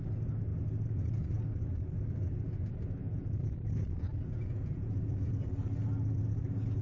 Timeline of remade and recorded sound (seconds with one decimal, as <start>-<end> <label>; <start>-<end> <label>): 0.0-3.0 recorded; 3.0-5.3 remade; 5.3-6.8 recorded